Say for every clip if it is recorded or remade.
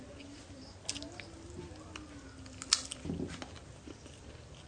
recorded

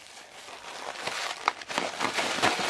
recorded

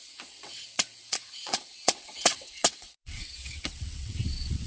remade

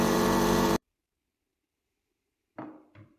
remade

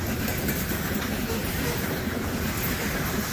recorded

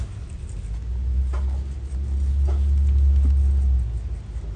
recorded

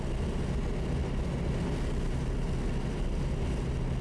recorded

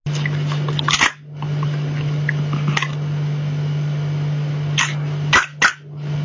recorded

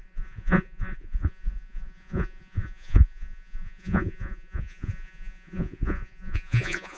remade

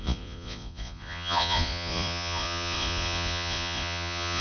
remade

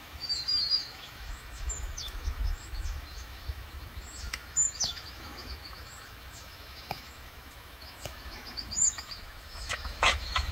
remade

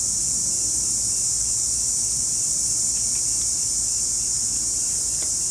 remade